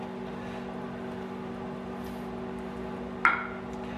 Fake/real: real